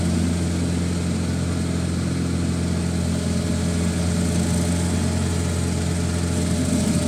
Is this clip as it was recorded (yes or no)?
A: yes